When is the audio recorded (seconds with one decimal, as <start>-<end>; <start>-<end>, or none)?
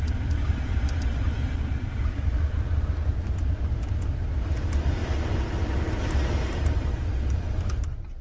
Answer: 0.0-8.2